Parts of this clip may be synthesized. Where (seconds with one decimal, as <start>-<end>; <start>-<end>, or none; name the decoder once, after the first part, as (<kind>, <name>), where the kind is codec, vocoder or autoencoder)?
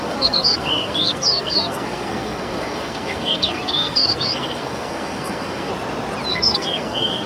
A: 0.0-5.7 (codec, SNAC); 6.3-7.3